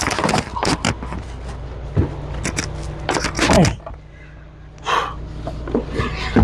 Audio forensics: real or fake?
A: real